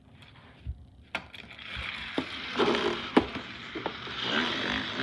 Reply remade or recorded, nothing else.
recorded